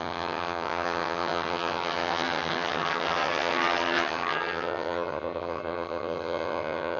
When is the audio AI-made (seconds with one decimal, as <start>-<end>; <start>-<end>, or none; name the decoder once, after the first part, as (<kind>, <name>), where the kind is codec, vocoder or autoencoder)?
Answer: 0.0-7.0 (vocoder, HiFi-GAN)